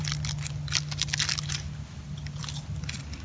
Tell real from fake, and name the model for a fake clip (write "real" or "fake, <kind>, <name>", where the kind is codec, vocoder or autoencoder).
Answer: real